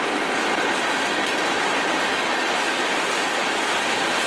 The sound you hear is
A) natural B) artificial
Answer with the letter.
A